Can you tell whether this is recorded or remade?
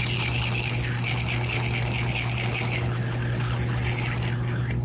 recorded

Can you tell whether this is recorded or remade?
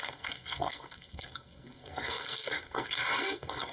remade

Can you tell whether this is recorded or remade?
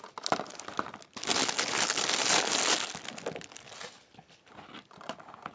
recorded